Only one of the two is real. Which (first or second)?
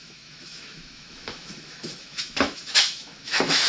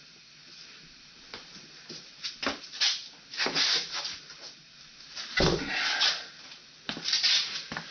second